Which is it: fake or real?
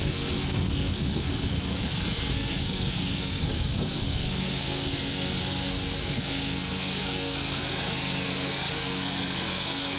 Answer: fake